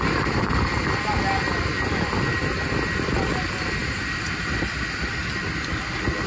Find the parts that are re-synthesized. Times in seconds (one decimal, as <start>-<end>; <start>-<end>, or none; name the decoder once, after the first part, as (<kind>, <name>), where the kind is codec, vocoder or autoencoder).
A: none